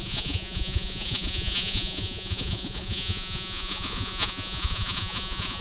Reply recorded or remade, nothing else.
remade